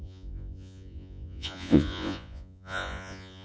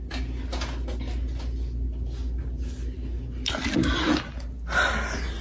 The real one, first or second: second